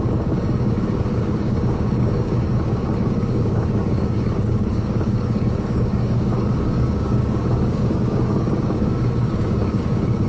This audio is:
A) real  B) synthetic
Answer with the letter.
B